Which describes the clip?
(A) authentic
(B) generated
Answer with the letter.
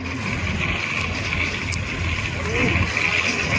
A